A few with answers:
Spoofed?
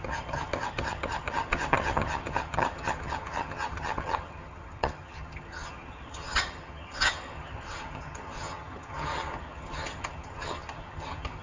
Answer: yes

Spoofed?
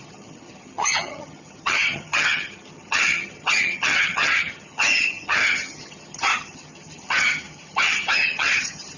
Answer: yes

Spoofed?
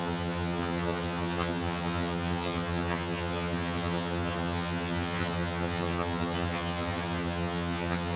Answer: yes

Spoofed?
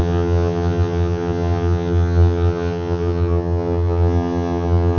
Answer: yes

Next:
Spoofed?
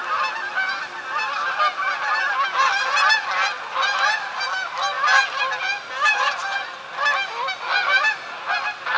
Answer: no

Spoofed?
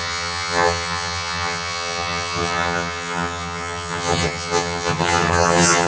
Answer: yes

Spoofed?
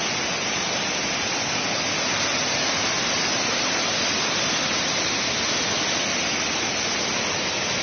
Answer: no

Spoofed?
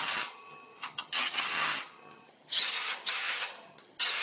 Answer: yes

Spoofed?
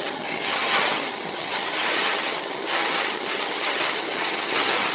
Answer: yes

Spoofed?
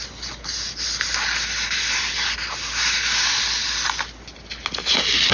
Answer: no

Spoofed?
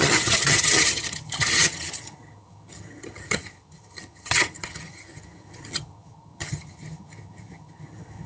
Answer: yes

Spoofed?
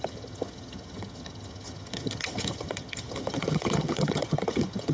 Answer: yes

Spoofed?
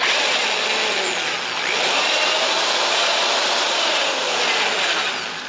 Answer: no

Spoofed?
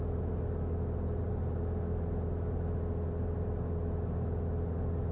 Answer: no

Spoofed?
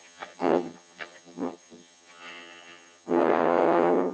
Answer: yes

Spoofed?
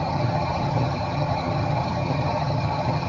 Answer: yes